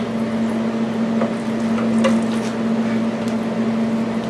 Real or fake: real